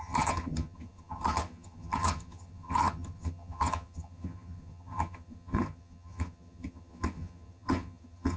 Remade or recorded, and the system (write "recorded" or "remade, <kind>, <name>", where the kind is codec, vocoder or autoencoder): remade, vocoder, HiFi-GAN